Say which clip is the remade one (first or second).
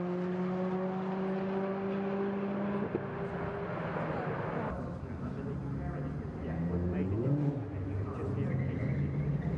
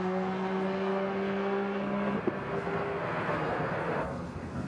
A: second